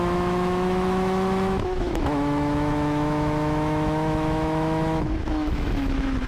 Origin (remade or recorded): remade